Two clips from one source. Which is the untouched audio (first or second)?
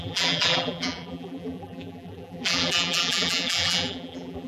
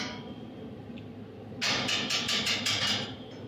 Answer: second